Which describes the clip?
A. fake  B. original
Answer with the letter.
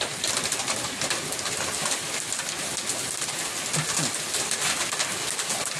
B